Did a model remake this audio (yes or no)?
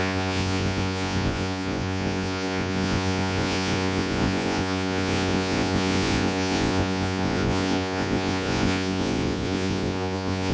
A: yes